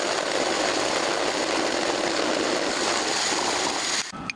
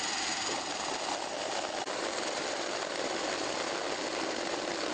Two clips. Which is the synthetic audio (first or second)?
second